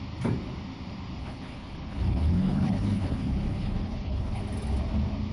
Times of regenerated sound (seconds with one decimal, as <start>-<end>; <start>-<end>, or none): 1.2-4.4